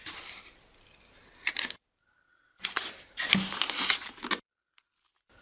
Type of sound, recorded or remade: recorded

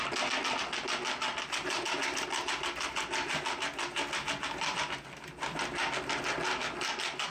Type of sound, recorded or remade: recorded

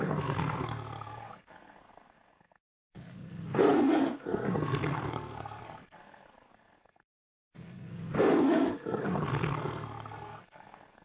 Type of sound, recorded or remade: remade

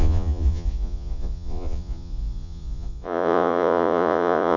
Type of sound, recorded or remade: remade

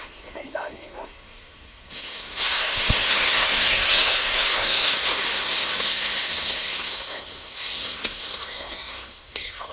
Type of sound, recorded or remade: remade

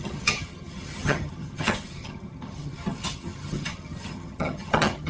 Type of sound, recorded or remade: remade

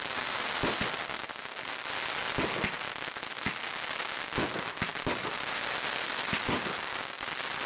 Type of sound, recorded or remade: recorded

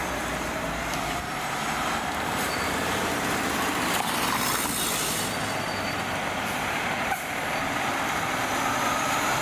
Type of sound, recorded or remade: remade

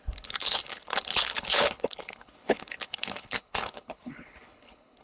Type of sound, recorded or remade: remade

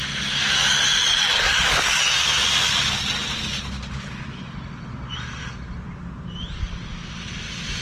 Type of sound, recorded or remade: recorded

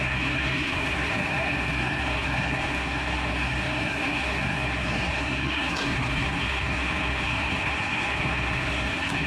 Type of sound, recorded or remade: remade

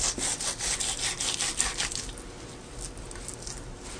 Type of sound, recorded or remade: recorded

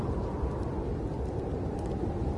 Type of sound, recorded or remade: recorded